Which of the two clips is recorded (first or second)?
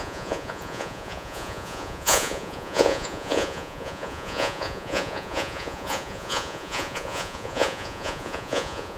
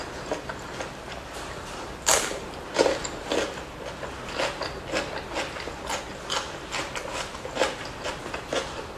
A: second